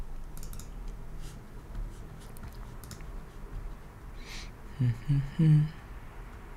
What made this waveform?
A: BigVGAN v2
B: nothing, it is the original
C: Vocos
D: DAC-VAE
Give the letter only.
B